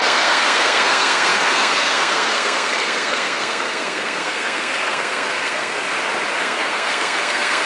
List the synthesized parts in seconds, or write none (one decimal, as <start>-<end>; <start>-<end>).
0.0-5.8; 6.4-7.7